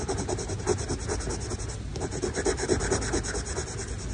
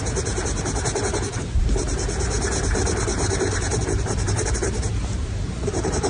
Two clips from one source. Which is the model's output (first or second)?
second